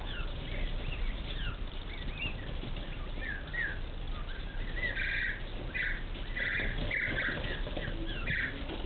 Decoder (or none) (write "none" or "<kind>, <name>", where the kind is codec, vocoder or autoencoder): none